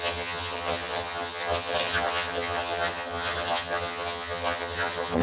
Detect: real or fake fake